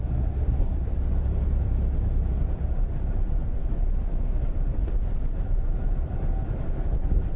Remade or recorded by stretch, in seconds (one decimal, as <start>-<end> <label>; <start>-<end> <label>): 0.0-0.9 remade; 0.9-7.4 recorded